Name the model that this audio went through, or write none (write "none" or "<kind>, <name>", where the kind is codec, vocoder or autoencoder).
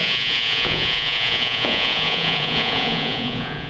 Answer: vocoder, Vocos